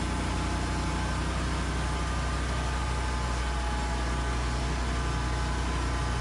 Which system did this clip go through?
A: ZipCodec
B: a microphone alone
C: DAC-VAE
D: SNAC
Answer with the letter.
B